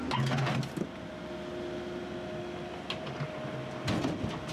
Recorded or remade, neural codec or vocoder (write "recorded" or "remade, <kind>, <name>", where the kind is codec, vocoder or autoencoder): recorded